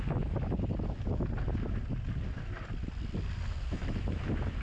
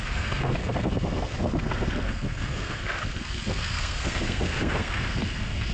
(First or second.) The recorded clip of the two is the first